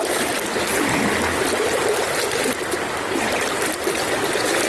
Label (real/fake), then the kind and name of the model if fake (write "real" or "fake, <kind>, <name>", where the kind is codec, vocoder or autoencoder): real